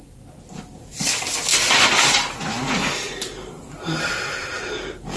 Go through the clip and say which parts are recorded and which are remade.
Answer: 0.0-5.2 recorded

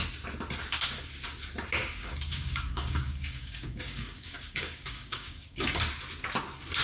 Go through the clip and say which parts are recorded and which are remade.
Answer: 0.0-1.8 recorded; 1.8-5.9 remade; 5.9-6.8 recorded

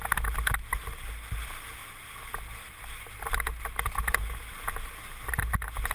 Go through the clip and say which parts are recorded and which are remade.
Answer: 0.0-5.9 recorded

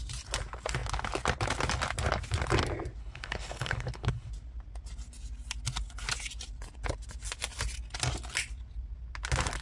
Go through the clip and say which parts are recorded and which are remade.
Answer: 0.0-3.0 recorded; 3.0-4.3 remade; 4.3-9.6 recorded

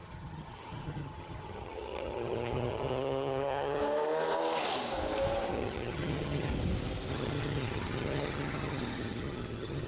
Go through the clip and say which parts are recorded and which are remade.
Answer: 0.0-3.8 remade; 3.8-5.5 recorded; 5.5-6.5 remade; 6.5-7.1 recorded; 7.1-9.9 remade

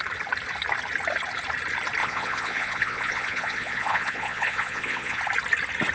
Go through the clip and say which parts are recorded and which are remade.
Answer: 0.0-2.0 recorded; 2.0-5.2 remade; 5.2-5.9 recorded

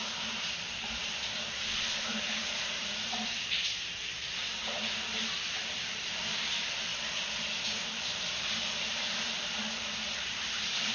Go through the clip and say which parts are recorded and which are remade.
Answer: 0.0-6.9 remade; 6.9-7.9 recorded; 7.9-10.9 remade

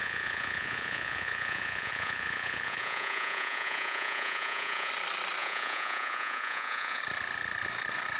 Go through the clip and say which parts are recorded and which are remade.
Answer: 0.0-4.9 remade; 4.9-5.4 recorded; 5.4-7.0 remade; 7.0-8.2 recorded